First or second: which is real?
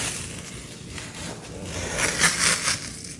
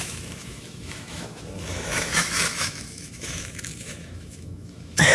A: first